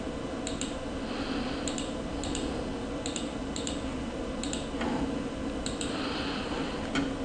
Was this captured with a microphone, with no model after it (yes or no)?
yes